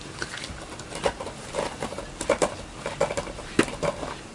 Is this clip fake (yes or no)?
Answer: no